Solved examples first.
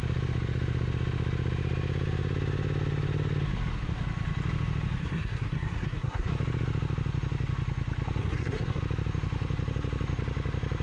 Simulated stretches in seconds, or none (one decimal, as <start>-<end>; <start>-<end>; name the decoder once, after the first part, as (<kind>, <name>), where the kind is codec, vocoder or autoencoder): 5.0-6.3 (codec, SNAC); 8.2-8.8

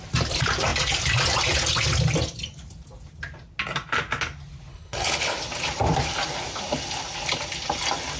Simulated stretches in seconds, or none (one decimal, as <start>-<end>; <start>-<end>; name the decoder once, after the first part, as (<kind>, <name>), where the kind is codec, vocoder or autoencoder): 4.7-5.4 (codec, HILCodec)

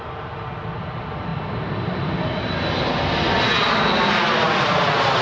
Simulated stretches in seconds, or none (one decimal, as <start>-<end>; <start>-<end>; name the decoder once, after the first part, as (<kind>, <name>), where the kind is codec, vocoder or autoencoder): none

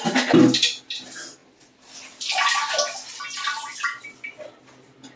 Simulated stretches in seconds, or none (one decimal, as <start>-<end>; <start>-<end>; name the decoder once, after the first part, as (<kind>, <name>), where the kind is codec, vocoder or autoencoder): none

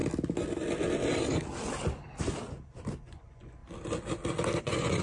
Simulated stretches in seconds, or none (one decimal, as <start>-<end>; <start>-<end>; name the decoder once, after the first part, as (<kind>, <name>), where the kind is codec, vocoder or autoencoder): 3.0-3.6 (vocoder, Vocos); 4.6-5.0

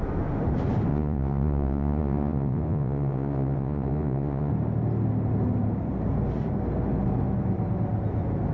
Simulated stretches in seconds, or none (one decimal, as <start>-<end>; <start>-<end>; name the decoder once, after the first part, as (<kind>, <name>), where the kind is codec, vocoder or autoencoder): 0.9-4.5 (vocoder, Vocos)